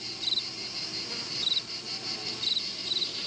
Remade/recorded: recorded